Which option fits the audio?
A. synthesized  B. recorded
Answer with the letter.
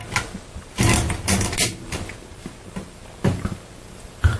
B